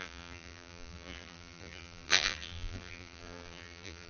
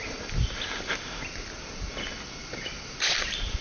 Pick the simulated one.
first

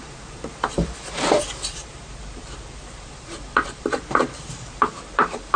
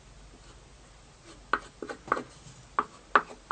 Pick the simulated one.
first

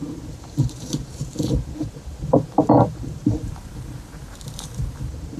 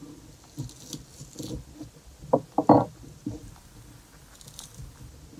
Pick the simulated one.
first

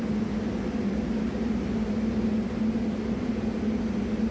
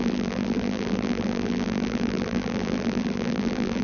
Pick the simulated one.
second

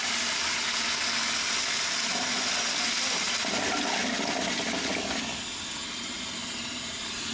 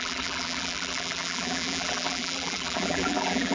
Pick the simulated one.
second